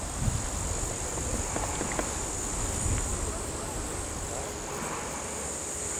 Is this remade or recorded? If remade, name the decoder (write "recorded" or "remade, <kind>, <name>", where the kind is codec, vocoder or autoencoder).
recorded